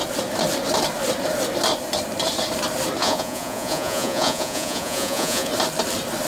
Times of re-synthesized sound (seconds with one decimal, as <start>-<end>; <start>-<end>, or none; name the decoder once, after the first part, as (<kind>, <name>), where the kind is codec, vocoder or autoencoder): 3.0-5.5 (vocoder, Vocos)